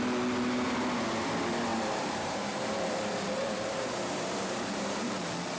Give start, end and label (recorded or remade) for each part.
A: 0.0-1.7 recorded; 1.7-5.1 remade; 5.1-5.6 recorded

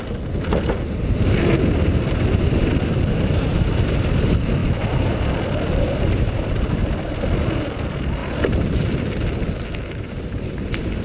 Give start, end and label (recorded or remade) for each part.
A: 0.0-4.6 recorded; 4.6-6.2 remade; 6.2-8.2 recorded; 8.2-9.1 remade; 9.1-11.0 recorded